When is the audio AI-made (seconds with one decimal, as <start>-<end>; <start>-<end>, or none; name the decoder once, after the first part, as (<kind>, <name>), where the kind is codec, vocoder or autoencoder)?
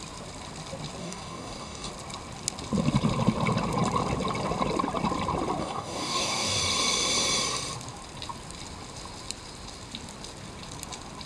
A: 1.0-1.9 (codec, DAC); 5.6-6.6